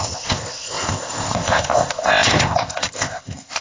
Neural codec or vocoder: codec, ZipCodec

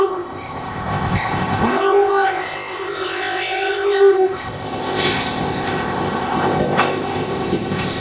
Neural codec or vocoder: codec, ZipCodec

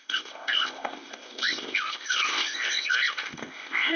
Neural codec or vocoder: codec, ZipCodec